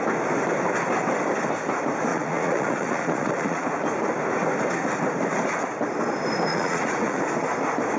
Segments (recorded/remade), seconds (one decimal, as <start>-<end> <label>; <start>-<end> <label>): 0.0-2.1 recorded; 2.1-3.6 remade; 3.6-6.5 recorded; 6.5-7.2 remade; 7.2-8.0 recorded